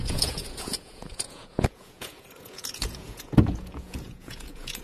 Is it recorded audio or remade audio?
remade